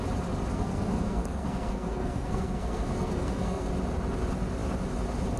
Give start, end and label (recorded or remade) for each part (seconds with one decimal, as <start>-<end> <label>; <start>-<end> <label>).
0.0-0.5 recorded; 0.5-3.7 remade; 3.7-5.4 recorded